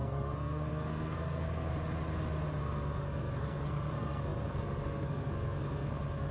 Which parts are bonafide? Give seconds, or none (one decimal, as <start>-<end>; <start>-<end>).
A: 1.7-2.6